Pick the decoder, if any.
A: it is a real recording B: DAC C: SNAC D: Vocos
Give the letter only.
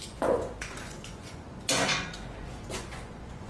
D